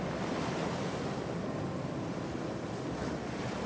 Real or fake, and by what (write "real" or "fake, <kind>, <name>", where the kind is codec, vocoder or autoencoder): real